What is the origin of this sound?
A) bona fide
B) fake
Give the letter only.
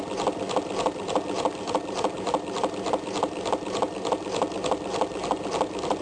A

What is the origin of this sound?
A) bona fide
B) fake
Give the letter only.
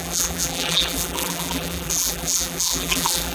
B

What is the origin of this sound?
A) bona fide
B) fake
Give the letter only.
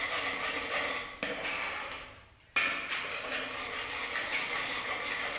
A